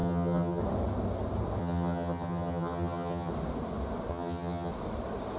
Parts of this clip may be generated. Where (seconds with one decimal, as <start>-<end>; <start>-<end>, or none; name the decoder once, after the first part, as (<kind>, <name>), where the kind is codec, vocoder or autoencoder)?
0.0-0.6 (vocoder, HiFi-GAN); 1.6-3.3; 4.1-4.7